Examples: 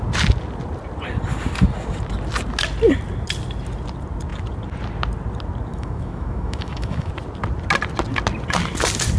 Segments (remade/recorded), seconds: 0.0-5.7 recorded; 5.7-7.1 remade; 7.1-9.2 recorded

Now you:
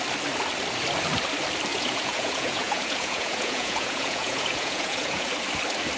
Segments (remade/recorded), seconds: 0.0-1.7 recorded; 1.7-5.3 remade; 5.3-6.0 recorded

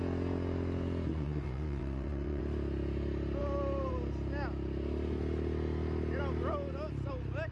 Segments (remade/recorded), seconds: 0.0-1.1 recorded; 1.1-2.4 remade; 2.4-7.5 recorded

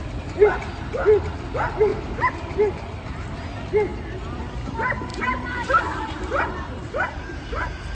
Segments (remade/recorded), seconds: 0.0-1.9 recorded; 1.9-2.7 remade; 2.7-5.1 recorded; 5.1-7.5 remade; 7.5-7.9 recorded

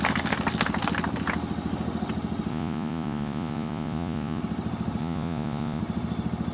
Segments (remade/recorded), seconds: 0.0-2.5 recorded; 2.5-4.4 remade; 4.4-5.0 recorded; 5.0-5.8 remade; 5.8-6.5 recorded

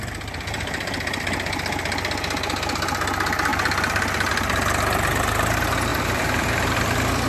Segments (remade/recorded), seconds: 0.0-5.9 recorded; 5.9-7.3 remade